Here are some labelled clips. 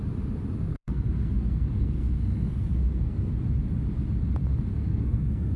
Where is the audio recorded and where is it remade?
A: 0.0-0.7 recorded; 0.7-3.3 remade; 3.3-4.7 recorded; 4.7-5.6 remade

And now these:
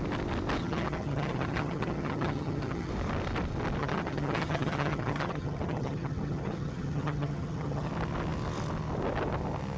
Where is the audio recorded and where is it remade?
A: 0.0-0.6 recorded; 0.6-2.9 remade; 2.9-3.8 recorded; 3.8-7.9 remade; 7.9-9.8 recorded

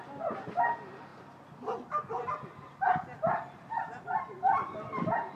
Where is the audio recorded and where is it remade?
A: 0.0-5.4 recorded

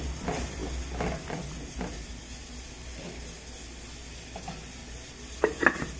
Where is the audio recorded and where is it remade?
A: 0.0-6.0 recorded